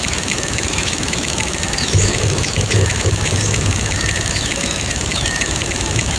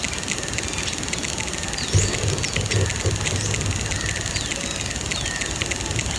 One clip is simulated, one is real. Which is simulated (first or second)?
first